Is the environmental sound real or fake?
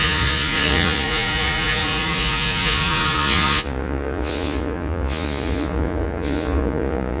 fake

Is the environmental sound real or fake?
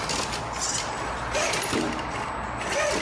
real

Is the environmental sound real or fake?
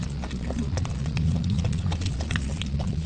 fake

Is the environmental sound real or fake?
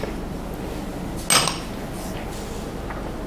real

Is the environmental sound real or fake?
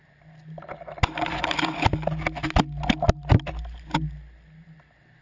real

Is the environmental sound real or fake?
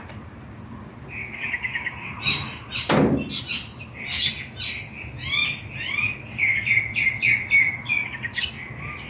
real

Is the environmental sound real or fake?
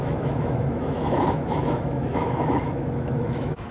fake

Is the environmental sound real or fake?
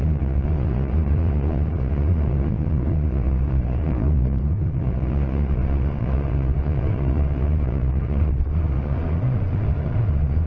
fake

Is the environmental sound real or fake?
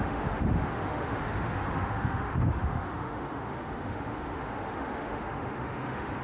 fake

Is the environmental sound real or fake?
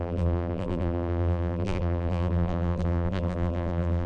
fake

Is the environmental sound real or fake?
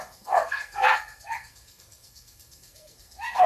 fake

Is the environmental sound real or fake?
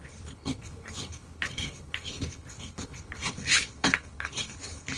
fake